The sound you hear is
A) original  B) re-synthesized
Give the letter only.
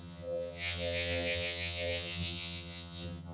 B